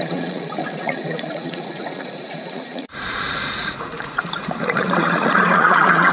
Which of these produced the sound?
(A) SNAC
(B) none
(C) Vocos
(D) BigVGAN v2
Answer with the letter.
C